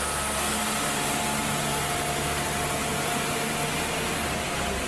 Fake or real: real